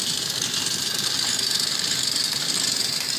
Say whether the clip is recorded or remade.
remade